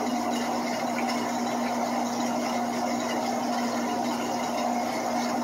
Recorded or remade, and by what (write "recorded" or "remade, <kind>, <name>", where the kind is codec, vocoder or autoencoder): recorded